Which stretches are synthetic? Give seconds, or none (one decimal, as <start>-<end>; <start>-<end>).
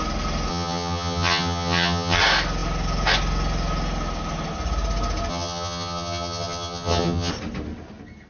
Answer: 0.5-2.2; 5.3-7.3